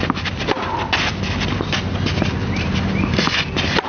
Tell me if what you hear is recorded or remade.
recorded